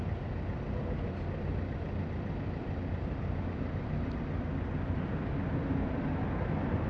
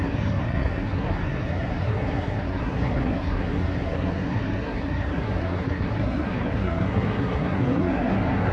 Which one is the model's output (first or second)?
second